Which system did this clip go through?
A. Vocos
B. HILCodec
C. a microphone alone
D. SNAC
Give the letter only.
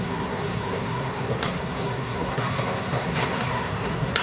D